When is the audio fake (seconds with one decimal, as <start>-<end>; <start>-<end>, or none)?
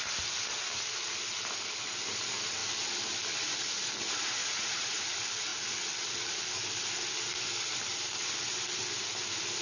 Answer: 4.4-5.0